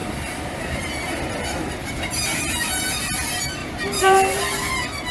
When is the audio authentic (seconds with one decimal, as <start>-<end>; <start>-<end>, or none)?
0.0-1.8; 2.8-3.6; 4.4-5.1

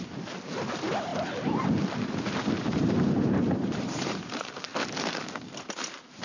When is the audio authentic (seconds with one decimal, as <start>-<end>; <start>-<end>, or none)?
1.1-2.5; 4.7-6.2

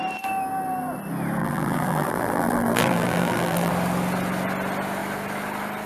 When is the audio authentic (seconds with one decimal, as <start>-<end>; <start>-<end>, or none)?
0.0-1.4; 3.7-5.9

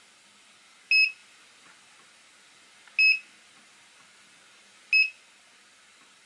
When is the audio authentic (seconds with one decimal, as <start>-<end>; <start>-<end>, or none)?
0.0-6.3

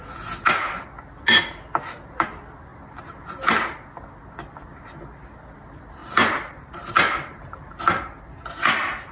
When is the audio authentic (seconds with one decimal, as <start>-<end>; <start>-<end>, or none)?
0.0-6.0; 7.8-9.1

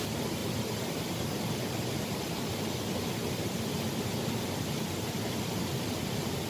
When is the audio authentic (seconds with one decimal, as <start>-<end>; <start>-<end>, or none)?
0.4-2.0

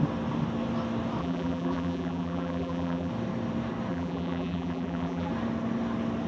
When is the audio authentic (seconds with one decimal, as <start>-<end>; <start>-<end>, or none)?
0.0-1.2; 3.1-3.9; 5.3-6.3